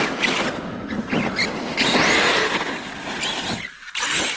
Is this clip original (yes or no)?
yes